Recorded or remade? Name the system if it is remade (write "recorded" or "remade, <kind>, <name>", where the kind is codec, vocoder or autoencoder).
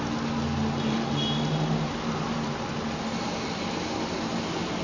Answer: recorded